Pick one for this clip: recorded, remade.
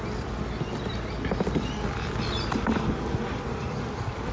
recorded